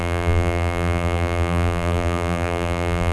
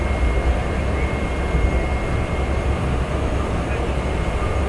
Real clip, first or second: second